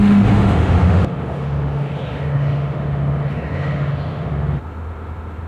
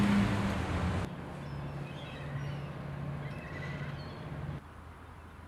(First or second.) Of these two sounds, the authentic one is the second